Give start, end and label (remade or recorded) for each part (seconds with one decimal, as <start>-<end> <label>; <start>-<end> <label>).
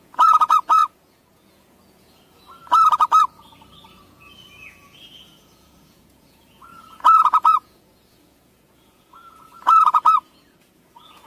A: 0.0-2.6 remade; 2.6-4.0 recorded; 4.0-11.3 remade